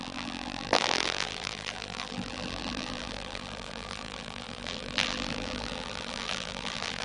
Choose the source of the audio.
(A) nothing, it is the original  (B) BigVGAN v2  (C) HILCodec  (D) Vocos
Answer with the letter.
B